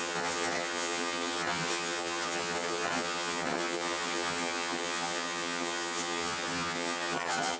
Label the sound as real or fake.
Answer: fake